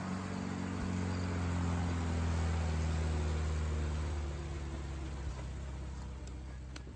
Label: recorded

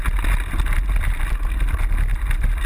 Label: recorded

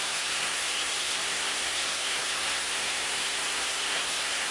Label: remade